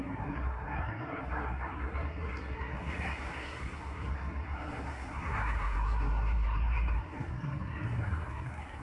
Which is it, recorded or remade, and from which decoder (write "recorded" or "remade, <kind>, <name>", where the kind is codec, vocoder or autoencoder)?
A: remade, codec, SNAC